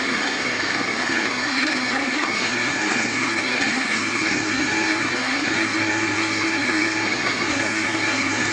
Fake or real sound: fake